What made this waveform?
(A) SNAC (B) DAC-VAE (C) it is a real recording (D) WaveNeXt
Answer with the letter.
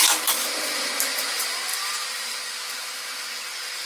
C